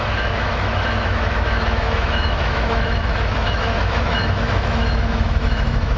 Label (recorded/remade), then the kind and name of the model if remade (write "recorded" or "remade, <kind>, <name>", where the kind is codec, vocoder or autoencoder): remade, autoencoder, DAC-VAE